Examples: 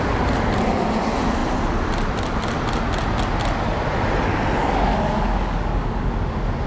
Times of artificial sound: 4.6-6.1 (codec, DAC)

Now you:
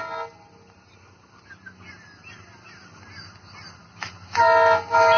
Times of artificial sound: none

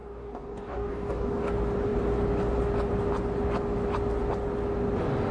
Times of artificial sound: 0.0-1.5 (codec, DAC)

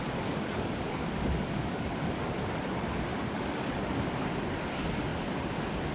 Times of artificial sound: 0.0-2.4 (codec, DAC); 3.1-3.8

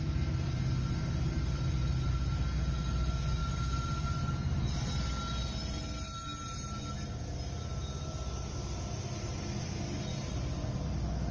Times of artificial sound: none